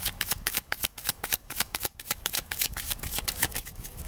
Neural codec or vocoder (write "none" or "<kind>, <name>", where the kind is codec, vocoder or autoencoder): codec, DAC